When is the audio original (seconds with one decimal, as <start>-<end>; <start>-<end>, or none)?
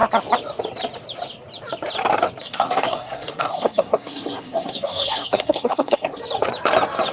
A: 0.0-2.4; 6.2-7.1